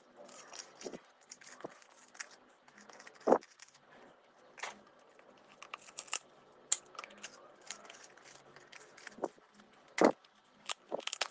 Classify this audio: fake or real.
real